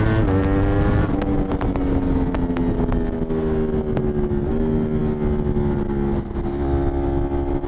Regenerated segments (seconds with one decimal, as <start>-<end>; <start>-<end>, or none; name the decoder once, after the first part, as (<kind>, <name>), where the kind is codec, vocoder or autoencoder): none